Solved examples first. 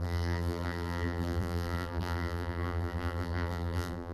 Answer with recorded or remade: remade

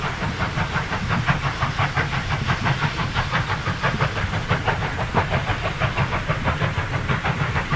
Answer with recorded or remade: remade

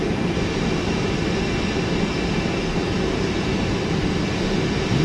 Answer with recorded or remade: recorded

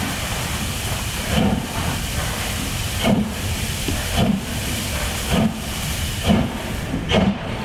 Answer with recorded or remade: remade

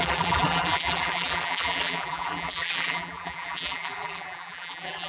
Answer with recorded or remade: remade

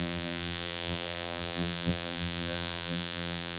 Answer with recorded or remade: remade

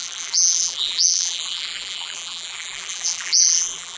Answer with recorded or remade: remade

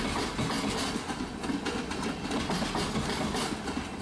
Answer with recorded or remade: recorded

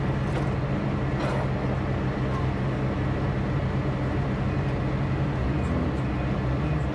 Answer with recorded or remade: recorded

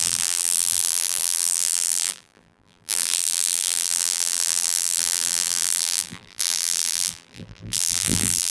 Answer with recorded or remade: remade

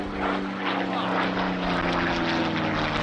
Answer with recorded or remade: recorded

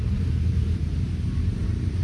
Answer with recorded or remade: remade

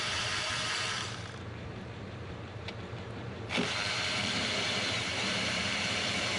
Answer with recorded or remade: remade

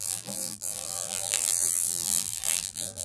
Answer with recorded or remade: remade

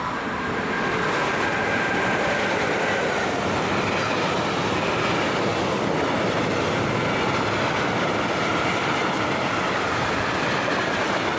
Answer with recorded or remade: recorded